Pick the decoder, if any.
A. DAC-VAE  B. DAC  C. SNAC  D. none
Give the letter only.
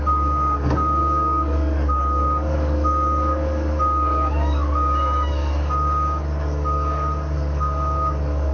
B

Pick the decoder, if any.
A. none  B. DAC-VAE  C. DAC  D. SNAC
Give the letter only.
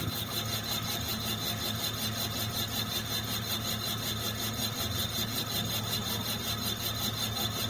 A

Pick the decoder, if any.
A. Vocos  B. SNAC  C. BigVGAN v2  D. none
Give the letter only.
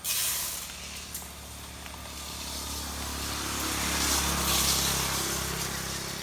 D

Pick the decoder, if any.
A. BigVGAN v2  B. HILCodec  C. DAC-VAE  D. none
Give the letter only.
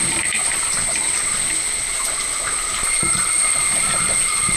D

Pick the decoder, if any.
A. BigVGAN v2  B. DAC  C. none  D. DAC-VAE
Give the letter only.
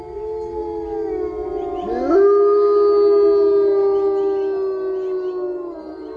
C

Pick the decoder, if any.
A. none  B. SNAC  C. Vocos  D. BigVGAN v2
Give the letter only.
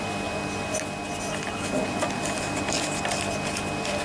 A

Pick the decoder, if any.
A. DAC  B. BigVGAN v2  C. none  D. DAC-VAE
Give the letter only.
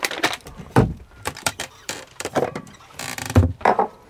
B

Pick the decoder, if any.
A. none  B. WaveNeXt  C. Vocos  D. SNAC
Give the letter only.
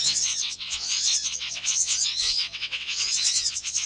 B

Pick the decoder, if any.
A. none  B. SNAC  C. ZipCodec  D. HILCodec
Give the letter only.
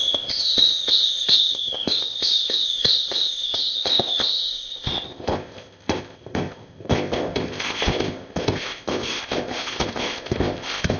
C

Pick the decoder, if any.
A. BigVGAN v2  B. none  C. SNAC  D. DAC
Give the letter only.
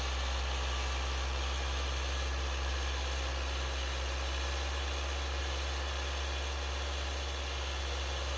B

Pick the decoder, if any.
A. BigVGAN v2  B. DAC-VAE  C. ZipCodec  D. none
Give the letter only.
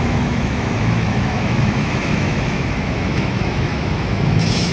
B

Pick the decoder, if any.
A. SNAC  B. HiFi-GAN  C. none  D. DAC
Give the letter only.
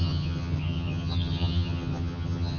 B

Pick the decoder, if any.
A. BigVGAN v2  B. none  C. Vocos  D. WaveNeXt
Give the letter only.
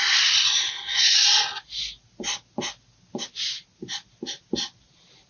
B